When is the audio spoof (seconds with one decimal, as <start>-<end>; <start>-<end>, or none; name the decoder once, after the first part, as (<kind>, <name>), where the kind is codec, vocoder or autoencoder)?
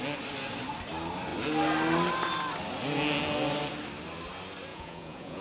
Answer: 4.7-5.4 (vocoder, Vocos)